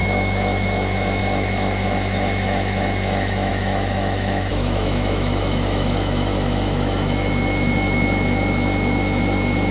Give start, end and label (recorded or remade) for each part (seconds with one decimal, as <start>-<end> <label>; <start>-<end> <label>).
0.0-9.7 remade